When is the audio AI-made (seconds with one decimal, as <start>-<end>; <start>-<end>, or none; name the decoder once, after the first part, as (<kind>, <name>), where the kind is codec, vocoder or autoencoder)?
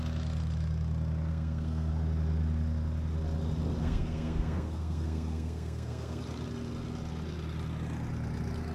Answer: 1.3-1.9 (codec, SNAC); 3.8-6.2